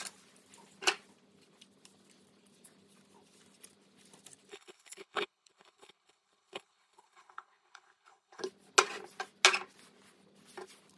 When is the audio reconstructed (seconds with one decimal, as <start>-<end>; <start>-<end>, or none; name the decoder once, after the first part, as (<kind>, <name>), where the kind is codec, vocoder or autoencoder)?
4.5-8.4 (codec, HILCodec)